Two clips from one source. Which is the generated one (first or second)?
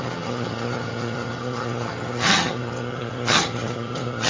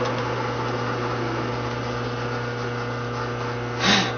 first